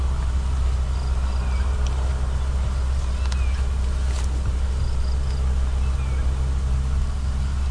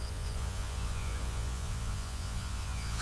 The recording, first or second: first